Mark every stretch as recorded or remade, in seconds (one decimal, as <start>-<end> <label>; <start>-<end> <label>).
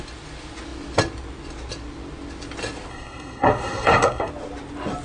0.0-2.9 recorded; 2.9-4.3 remade; 4.3-5.0 recorded